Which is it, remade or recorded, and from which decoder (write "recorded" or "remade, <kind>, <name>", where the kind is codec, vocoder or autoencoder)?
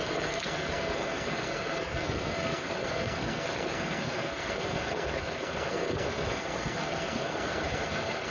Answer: remade, codec, SNAC